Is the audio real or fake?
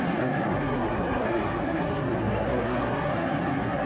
fake